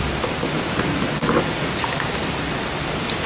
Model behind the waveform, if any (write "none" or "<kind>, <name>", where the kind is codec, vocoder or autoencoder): none